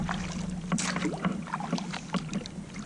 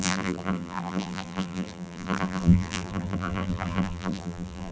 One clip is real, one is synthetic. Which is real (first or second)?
first